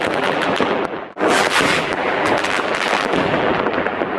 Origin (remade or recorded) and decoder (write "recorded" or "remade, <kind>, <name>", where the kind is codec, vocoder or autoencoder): remade, vocoder, BigVGAN v2